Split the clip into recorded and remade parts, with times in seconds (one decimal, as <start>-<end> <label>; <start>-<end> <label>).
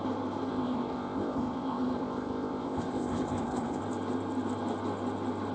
0.0-0.5 recorded; 0.5-3.8 remade; 3.8-5.5 recorded